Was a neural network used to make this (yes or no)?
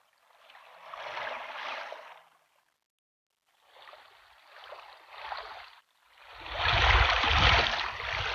no